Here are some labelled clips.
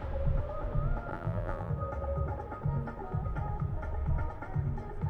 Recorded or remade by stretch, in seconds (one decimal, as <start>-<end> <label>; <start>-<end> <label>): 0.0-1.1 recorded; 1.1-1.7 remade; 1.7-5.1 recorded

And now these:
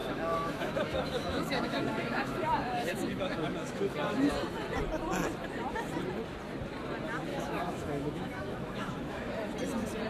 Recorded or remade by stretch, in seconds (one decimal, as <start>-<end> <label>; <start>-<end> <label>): 0.0-4.3 remade; 4.3-7.3 recorded; 7.3-9.3 remade; 9.3-10.1 recorded

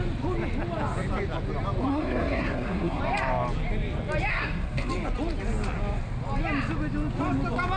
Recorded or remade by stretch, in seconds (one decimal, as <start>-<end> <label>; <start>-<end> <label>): 0.0-1.9 recorded; 1.9-3.0 remade; 3.0-4.3 recorded; 4.3-4.9 remade; 4.9-7.8 recorded

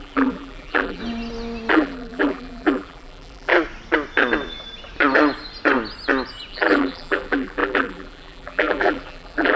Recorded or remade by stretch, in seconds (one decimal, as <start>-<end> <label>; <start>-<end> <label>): 0.0-1.0 remade; 1.0-1.7 recorded; 1.7-3.5 remade; 3.5-6.5 recorded; 6.5-9.6 remade

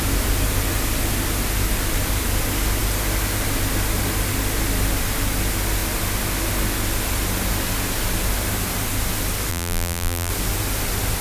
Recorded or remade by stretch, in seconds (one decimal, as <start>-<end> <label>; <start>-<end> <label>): 0.0-9.5 recorded; 9.5-10.3 remade; 10.3-11.2 recorded